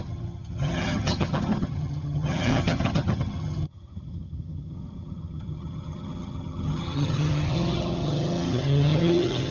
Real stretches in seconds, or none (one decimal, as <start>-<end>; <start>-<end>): none

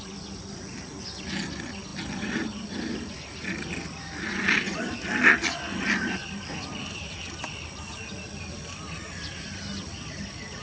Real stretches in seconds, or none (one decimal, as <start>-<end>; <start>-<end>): 0.0-10.6

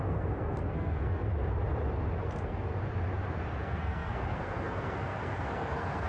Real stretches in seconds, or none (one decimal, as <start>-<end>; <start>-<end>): 1.3-2.2; 2.7-3.6

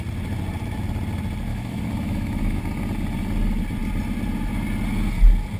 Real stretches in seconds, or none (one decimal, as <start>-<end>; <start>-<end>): 0.0-1.5; 2.6-5.6

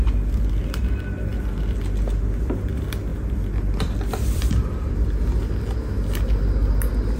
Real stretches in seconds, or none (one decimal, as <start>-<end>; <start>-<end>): 0.0-3.1; 4.9-7.2

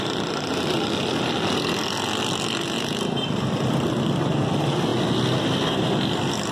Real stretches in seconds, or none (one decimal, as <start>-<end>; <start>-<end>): 0.0-6.5